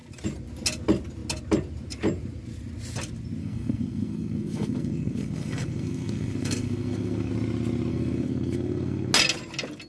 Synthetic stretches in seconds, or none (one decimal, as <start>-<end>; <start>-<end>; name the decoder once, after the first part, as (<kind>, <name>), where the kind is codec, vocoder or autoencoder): 3.4-7.3 (codec, SNAC); 7.9-9.1